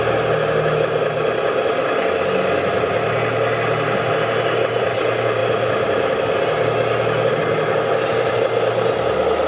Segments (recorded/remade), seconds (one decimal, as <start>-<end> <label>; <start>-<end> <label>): 0.0-9.5 recorded